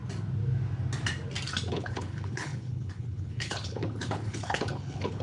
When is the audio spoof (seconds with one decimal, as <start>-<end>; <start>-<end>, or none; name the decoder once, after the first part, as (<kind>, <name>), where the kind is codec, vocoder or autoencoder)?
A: 1.7-5.2 (codec, HILCodec)